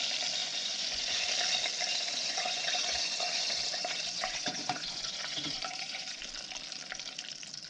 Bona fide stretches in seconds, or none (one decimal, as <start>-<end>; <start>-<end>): 0.0-0.4; 1.3-1.9; 6.2-7.7